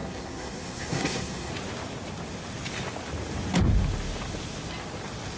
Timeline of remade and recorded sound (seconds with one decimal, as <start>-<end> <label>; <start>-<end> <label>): 0.0-1.5 remade; 1.5-5.4 recorded